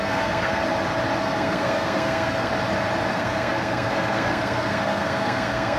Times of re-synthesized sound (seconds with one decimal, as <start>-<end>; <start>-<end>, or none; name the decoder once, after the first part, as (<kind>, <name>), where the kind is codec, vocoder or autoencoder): 0.0-0.6 (codec, SNAC); 1.2-2.5; 3.1-5.8